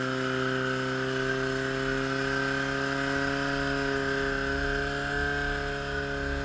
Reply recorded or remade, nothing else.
recorded